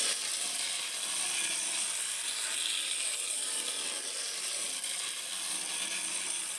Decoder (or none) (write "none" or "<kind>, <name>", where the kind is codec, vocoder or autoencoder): none